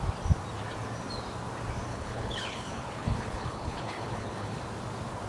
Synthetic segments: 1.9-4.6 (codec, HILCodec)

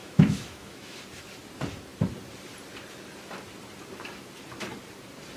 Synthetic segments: 0.0-1.0 (autoencoder, DAC-VAE)

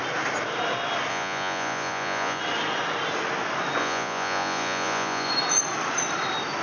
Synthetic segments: 1.1-2.4 (vocoder, Vocos); 3.8-5.3

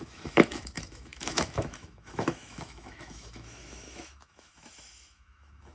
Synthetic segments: 0.0-5.7 (autoencoder, DAC-VAE)